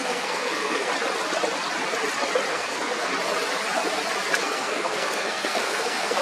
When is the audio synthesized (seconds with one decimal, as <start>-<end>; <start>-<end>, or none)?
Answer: 0.0-0.9; 2.5-3.1; 4.4-6.2